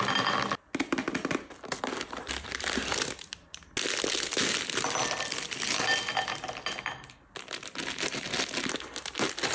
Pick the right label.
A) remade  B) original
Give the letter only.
B